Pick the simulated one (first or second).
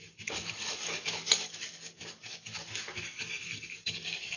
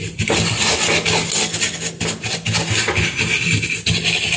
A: first